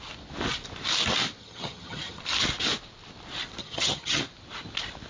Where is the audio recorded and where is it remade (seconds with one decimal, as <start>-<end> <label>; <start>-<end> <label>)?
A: 0.0-1.4 recorded; 1.4-2.2 remade; 2.2-3.6 recorded; 3.6-4.2 remade; 4.2-5.1 recorded